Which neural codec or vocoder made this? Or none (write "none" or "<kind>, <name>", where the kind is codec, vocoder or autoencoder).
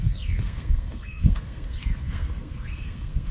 codec, SNAC